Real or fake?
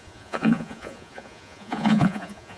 fake